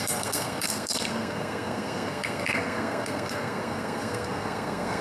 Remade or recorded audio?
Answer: remade